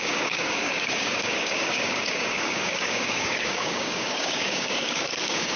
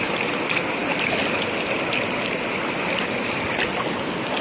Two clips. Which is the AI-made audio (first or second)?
first